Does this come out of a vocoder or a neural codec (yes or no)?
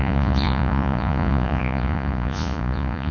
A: yes